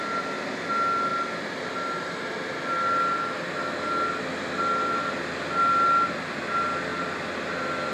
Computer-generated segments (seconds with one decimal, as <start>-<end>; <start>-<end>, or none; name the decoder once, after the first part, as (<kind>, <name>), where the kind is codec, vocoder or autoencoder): none